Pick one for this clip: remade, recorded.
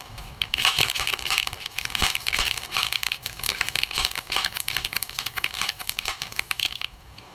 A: remade